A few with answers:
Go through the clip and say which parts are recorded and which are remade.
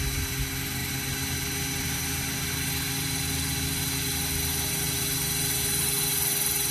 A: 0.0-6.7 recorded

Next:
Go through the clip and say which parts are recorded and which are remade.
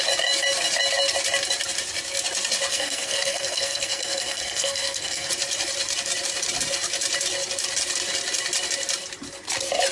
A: 0.0-2.7 recorded; 2.7-5.3 remade; 5.3-9.9 recorded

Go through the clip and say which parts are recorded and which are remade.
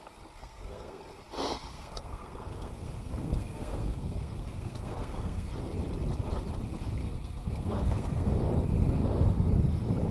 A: 0.0-0.4 recorded; 0.4-1.0 remade; 1.0-1.5 recorded; 1.5-5.5 remade; 5.5-7.0 recorded; 7.0-8.3 remade; 8.3-10.1 recorded